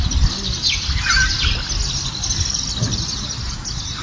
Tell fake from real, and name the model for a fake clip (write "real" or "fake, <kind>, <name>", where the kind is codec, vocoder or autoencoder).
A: real